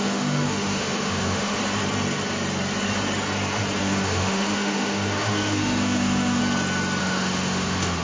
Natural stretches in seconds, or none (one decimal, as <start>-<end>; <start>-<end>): 1.6-3.8; 6.4-7.0